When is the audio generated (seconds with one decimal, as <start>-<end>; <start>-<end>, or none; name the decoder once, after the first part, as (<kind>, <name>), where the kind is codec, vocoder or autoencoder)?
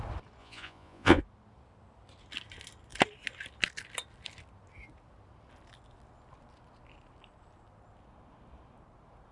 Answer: 0.4-1.2 (vocoder, Vocos)